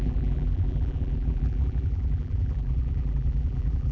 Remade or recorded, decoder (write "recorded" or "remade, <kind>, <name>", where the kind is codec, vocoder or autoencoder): remade, vocoder, BigVGAN v2